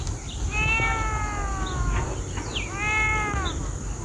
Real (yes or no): yes